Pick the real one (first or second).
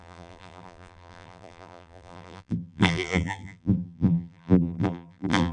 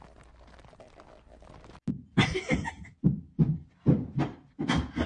second